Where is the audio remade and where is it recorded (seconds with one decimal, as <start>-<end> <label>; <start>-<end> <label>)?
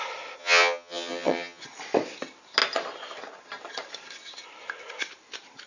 0.0-0.4 recorded; 0.4-1.6 remade; 1.6-5.7 recorded